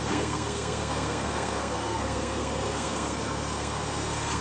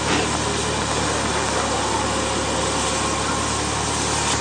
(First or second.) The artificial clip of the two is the first